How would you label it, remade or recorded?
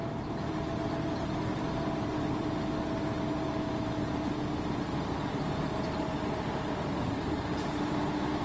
recorded